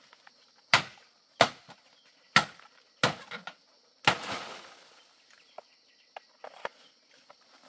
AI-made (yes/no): no